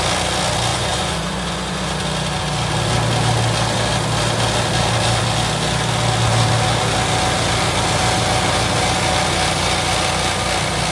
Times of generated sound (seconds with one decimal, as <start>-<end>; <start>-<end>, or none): 0.7-1.9